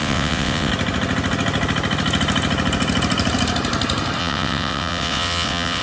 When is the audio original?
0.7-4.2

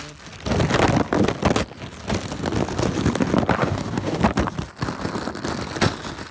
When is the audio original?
0.0-3.6; 4.2-6.3

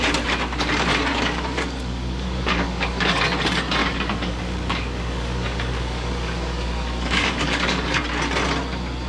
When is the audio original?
0.0-1.1; 3.2-3.8; 8.0-9.1